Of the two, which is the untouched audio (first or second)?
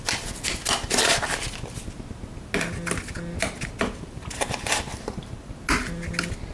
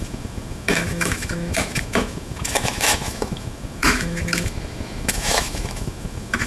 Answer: first